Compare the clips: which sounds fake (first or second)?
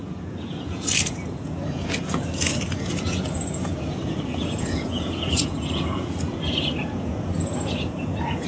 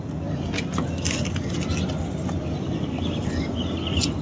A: first